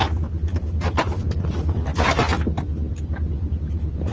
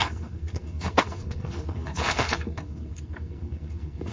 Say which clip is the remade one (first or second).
second